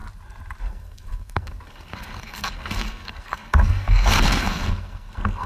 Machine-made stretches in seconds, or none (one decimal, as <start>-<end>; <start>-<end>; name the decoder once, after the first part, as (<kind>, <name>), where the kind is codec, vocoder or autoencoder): 0.6-5.5 (codec, SNAC)